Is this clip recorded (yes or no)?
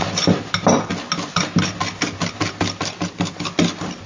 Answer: yes